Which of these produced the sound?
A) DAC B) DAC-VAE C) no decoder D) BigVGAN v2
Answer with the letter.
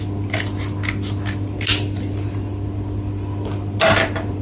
C